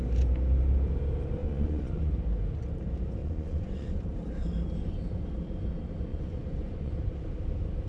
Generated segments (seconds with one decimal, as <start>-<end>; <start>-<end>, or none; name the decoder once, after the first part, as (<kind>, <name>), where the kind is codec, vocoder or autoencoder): 1.4-2.1 (vocoder, Vocos); 3.2-4.0; 6.1-6.9